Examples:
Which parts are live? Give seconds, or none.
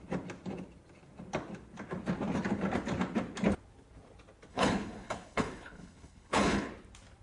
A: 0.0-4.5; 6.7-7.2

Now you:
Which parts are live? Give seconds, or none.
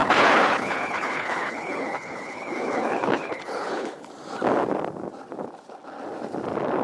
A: 4.1-6.8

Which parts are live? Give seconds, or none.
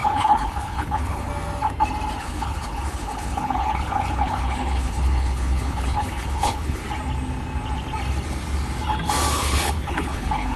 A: 1.3-2.2; 6.8-9.3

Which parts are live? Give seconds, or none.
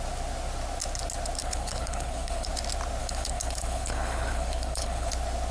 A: 0.0-1.4; 2.5-3.0; 5.1-5.5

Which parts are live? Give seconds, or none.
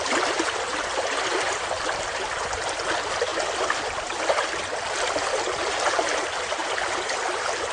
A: 0.0-7.7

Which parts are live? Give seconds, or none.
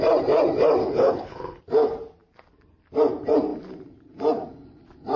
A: 0.0-0.8; 1.6-5.2